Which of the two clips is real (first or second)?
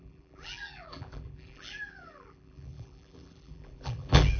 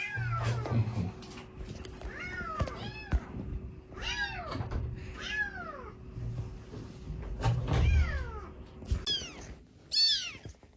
second